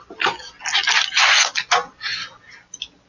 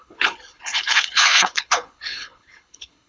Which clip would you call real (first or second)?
first